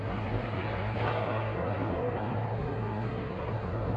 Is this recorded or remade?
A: remade